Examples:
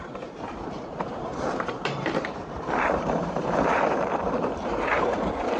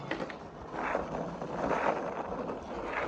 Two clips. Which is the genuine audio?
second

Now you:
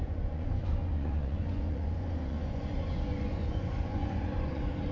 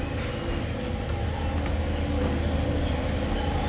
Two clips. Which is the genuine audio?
second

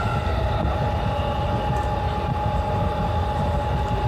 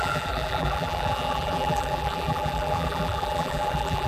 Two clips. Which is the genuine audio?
first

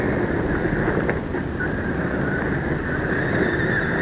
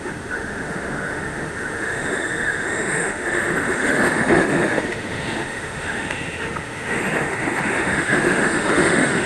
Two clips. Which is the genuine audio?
first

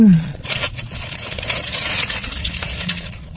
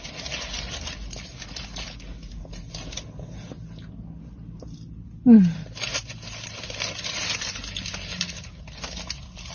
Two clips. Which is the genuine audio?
second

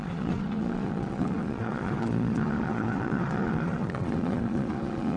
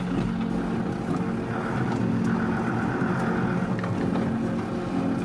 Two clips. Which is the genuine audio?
second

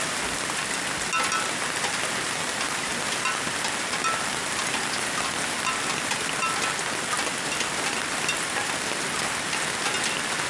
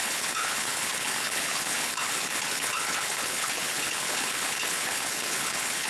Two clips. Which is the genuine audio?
first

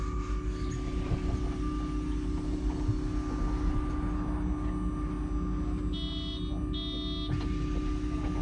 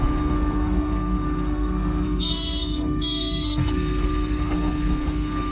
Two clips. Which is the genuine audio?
first